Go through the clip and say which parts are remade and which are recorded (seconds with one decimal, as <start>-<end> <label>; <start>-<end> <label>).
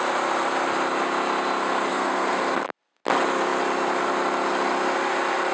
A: 0.0-1.9 recorded; 1.9-2.4 remade; 2.4-5.5 recorded